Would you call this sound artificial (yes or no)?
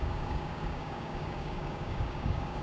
yes